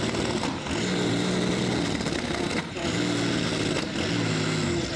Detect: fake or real real